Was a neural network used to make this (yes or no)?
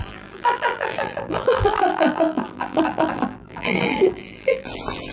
yes